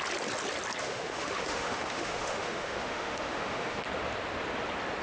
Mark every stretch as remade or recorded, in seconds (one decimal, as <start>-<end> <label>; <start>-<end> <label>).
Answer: 0.0-0.8 recorded; 0.8-3.8 remade; 3.8-5.0 recorded